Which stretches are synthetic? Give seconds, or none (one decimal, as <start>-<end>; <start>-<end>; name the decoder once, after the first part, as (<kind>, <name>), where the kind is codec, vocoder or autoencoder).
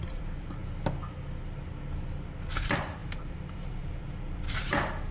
0.0-0.6 (vocoder, BigVGAN v2); 2.6-5.1